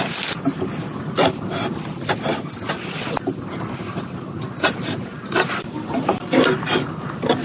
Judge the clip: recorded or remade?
recorded